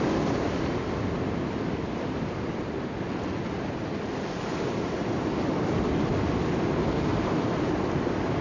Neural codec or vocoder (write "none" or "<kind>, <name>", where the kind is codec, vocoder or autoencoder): none